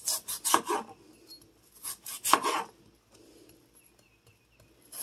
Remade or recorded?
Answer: recorded